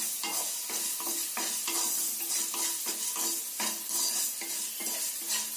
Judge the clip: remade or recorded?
recorded